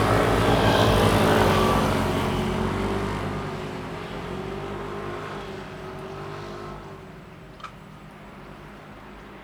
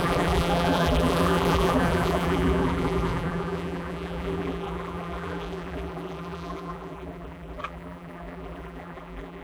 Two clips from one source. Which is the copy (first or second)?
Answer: second